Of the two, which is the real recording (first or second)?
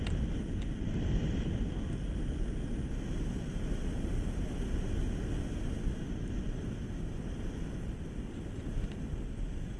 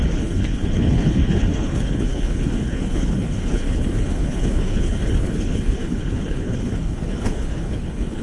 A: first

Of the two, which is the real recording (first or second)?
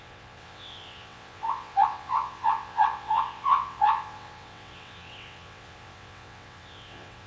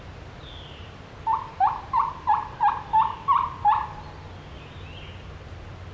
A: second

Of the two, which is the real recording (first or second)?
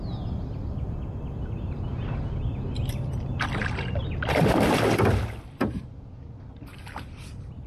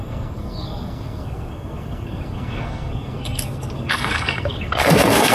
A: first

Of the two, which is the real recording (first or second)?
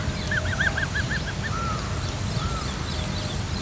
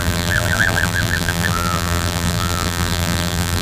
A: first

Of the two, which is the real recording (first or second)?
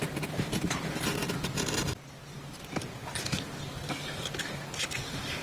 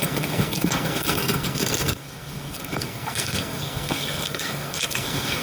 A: first